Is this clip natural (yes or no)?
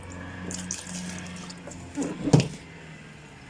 yes